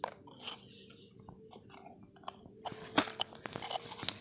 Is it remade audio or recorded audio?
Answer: recorded